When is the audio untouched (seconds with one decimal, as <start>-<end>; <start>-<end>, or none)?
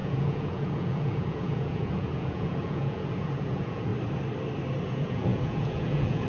3.9-4.8